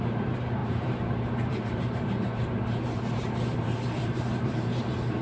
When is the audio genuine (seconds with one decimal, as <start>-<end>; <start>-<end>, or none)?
none